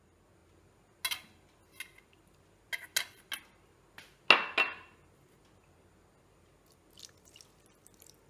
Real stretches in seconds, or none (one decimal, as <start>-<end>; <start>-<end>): 0.0-8.3